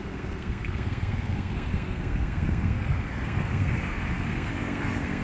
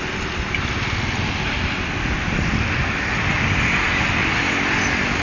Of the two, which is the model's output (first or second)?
first